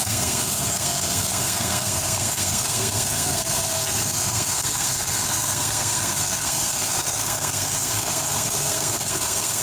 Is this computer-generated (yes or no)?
yes